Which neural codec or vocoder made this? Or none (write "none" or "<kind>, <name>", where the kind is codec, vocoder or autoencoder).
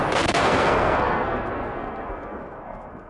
codec, SNAC